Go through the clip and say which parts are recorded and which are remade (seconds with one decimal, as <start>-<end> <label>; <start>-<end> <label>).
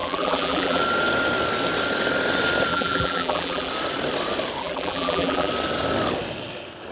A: 0.0-0.8 remade; 0.8-2.7 recorded; 2.7-3.7 remade; 3.7-4.6 recorded; 4.6-5.5 remade; 5.5-6.9 recorded